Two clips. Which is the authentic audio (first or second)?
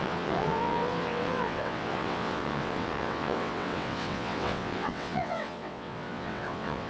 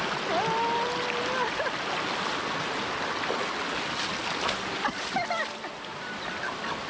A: second